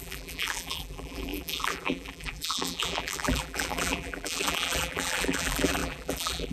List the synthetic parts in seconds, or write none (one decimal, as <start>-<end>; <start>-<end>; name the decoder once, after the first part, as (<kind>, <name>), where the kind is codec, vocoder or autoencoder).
0.0-6.5 (vocoder, BigVGAN v2)